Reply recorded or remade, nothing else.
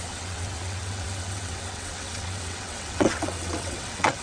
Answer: remade